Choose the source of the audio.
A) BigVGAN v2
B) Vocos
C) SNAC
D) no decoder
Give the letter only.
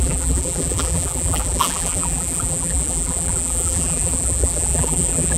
A